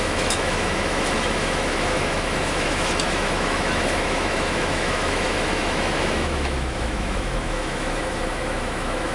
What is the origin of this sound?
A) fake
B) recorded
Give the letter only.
A